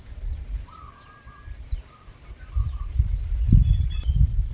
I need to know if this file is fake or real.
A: real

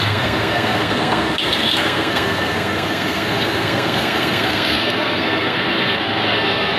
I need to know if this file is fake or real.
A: fake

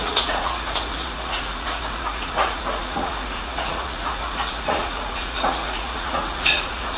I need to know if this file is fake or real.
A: fake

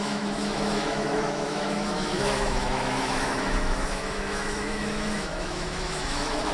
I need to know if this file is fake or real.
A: fake